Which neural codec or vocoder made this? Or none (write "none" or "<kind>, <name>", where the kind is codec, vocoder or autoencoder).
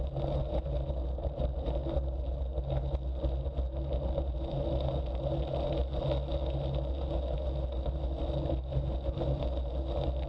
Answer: none